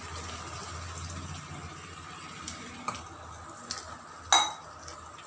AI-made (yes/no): no